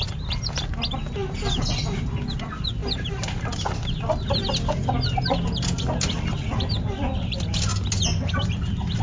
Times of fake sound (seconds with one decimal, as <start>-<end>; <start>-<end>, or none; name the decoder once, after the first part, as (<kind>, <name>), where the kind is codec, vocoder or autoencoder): none